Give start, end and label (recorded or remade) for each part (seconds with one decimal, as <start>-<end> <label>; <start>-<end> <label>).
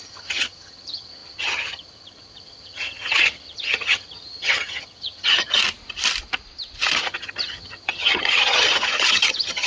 0.0-5.6 remade; 5.6-7.0 recorded; 7.0-9.7 remade